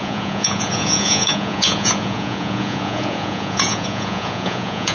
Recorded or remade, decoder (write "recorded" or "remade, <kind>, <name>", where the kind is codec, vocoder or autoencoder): remade, vocoder, Vocos